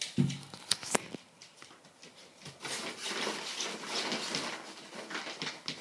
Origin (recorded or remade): recorded